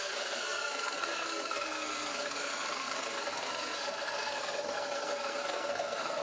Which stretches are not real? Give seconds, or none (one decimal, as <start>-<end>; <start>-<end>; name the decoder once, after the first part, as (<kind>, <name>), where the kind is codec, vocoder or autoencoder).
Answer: 0.0-6.2 (codec, SNAC)